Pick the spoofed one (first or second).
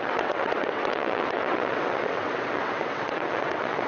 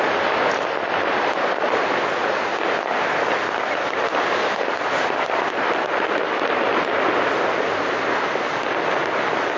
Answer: first